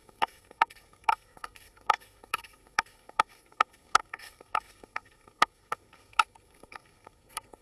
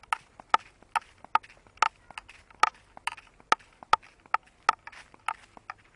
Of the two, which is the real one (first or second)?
second